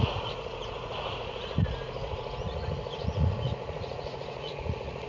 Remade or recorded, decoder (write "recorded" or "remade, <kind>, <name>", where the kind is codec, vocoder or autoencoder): remade, vocoder, Vocos